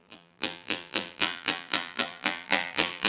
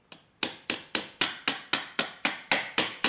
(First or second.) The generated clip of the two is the first